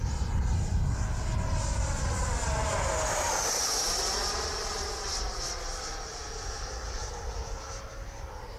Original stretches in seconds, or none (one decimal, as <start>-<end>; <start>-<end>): 0.0-8.6